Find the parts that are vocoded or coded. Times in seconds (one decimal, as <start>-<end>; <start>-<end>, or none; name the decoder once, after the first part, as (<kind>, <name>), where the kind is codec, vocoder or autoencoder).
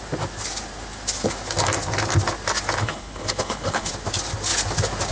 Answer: 2.8-3.9 (codec, HILCodec)